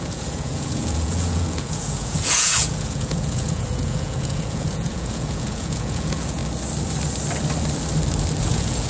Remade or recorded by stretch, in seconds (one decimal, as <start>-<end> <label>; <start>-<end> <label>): 0.0-6.4 remade; 6.4-8.4 recorded; 8.4-8.9 remade